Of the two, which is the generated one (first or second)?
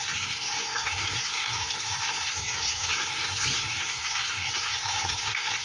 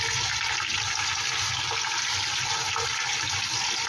first